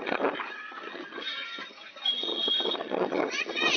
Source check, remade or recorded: remade